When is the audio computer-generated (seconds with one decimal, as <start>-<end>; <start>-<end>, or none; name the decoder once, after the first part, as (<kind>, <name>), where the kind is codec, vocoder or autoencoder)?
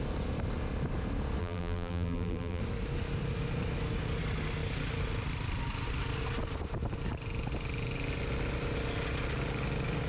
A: 1.4-2.6 (vocoder, BigVGAN v2)